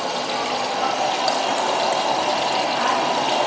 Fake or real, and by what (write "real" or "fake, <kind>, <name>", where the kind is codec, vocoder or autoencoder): real